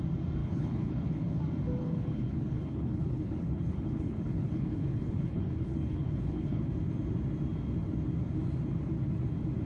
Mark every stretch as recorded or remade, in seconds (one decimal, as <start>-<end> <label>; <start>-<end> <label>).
0.0-0.4 recorded; 0.4-1.4 remade; 1.4-1.8 recorded; 1.8-6.6 remade; 6.6-9.7 recorded